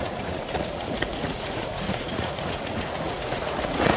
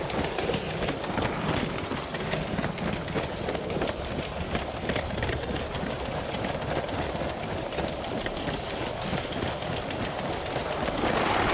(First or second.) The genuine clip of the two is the second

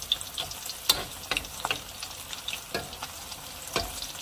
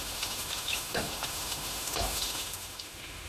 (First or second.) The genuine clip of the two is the first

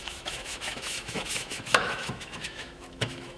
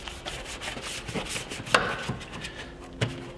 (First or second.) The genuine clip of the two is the second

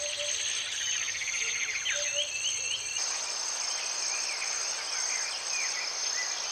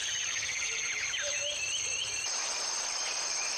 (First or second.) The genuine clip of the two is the first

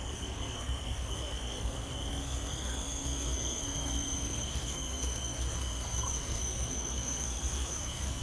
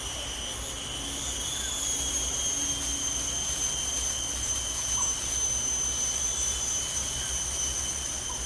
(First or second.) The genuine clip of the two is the second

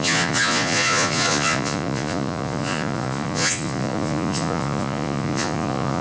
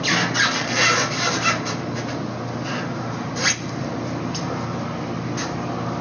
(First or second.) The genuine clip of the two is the second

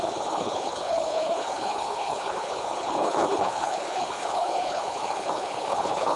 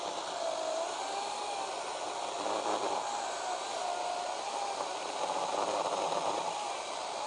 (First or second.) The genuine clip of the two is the second